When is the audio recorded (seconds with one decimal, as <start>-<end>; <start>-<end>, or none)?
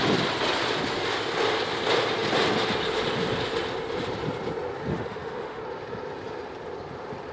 0.0-4.9; 5.6-7.3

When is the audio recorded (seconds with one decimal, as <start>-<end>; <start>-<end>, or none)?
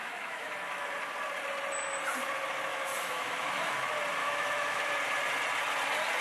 0.9-2.7; 3.8-4.2; 4.9-6.2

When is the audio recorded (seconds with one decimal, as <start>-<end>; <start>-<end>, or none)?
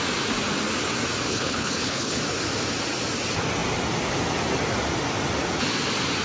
0.0-1.3; 2.2-6.2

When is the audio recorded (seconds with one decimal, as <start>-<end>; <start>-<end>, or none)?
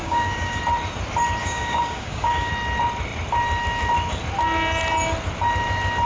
0.6-1.4; 2.5-6.1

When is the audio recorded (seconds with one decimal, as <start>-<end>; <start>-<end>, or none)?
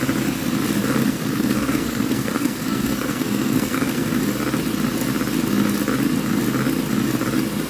0.0-0.8; 4.2-7.7